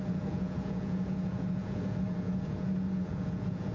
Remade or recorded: remade